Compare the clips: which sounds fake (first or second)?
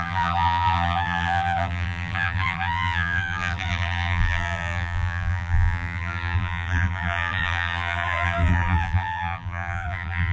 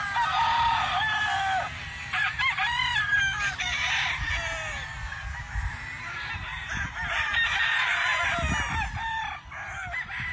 first